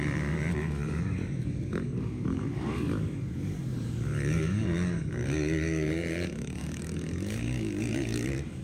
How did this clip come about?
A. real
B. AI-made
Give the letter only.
B